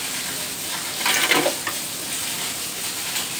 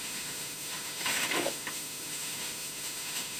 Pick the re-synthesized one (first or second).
second